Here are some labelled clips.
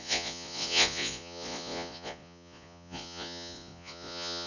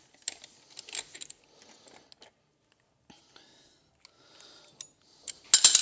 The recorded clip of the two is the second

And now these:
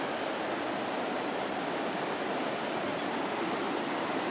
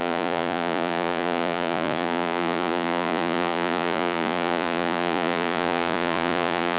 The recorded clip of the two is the first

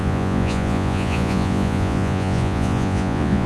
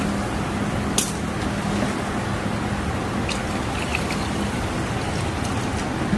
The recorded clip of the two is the second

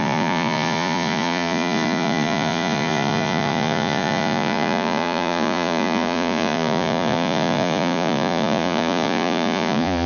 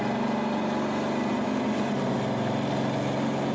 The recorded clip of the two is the second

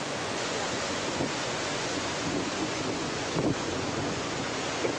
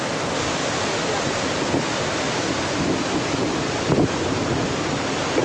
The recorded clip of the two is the second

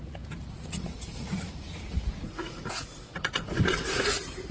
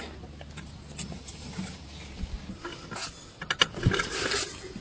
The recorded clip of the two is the second